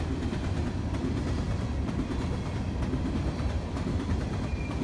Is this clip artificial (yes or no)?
no